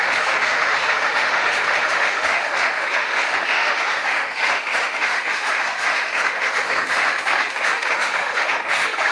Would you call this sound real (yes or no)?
no